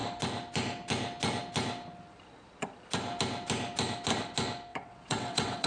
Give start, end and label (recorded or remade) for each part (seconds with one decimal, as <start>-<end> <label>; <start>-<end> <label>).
0.0-4.7 recorded; 4.7-5.7 remade